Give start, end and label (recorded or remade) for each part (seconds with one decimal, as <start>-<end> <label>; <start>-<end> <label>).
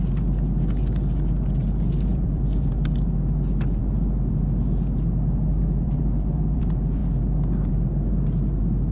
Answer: 0.0-2.1 recorded; 2.1-2.7 remade; 2.7-5.5 recorded; 5.5-6.6 remade; 6.6-8.9 recorded